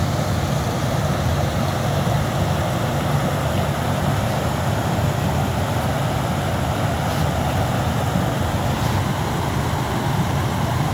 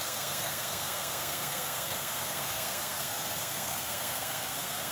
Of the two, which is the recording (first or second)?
first